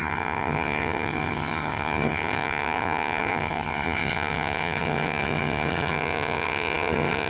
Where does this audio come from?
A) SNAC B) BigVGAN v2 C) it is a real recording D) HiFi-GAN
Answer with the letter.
D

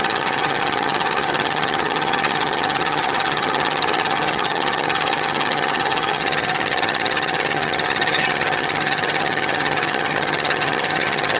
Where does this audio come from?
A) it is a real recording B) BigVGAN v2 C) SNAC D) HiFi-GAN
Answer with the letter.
D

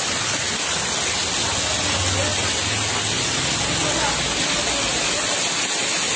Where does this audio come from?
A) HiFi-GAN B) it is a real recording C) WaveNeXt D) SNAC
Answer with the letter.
B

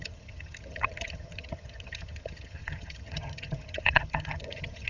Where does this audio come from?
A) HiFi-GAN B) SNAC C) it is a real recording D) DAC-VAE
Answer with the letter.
A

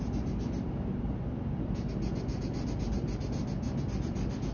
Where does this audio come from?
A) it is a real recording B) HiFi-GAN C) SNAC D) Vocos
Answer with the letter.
A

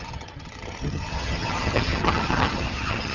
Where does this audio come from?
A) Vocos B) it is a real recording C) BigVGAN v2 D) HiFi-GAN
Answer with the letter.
D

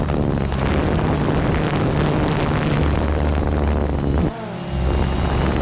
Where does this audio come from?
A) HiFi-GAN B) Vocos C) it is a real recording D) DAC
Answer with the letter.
C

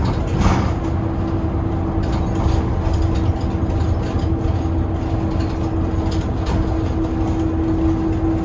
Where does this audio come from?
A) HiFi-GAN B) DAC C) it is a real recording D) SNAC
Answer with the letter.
C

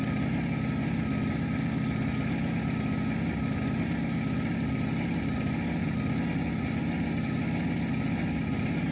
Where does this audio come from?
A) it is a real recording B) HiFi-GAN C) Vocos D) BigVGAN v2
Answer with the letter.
A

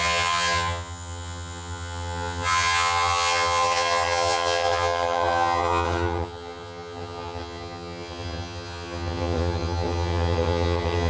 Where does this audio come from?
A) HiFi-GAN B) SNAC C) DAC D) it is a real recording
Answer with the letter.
A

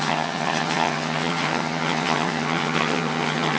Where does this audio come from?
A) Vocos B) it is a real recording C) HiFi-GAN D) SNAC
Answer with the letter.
C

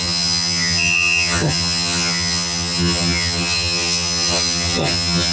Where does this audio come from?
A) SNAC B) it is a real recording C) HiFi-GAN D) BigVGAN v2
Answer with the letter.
C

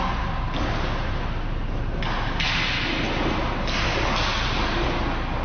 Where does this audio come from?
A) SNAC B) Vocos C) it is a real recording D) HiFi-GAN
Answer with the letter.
C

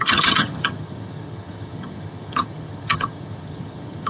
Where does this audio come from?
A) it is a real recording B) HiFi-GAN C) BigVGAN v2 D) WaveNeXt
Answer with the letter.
B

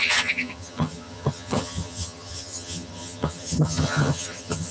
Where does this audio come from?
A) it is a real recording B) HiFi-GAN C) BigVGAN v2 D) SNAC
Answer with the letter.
B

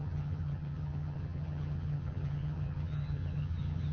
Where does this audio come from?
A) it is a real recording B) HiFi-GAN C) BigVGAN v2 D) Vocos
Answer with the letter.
B